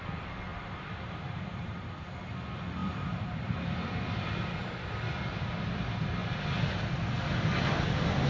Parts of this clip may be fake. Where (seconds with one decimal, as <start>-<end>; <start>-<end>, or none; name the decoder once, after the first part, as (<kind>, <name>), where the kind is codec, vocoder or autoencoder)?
0.5-1.9 (vocoder, BigVGAN v2); 2.8-4.9